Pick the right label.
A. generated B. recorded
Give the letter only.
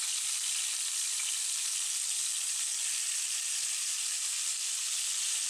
B